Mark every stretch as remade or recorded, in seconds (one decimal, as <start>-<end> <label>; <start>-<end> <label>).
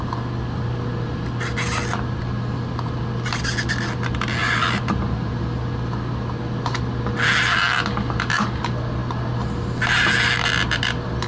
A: 0.0-4.4 recorded; 4.4-5.4 remade; 5.4-11.3 recorded